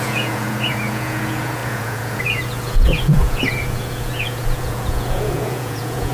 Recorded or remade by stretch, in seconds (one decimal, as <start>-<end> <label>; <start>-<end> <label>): 0.0-6.1 remade